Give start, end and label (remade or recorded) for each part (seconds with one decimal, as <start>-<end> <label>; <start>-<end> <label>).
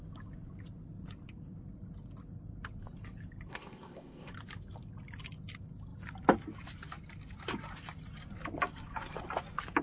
0.0-3.5 recorded; 3.5-4.3 remade; 4.3-9.8 recorded